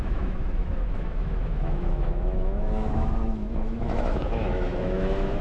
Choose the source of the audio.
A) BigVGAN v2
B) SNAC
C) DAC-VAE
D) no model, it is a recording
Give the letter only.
C